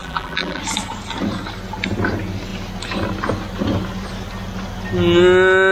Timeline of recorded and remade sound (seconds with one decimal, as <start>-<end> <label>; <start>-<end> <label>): 0.0-0.6 remade; 0.6-5.7 recorded